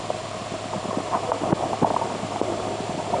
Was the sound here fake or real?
real